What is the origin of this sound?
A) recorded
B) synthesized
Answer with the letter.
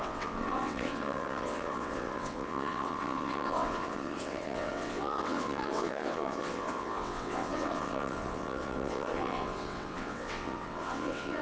B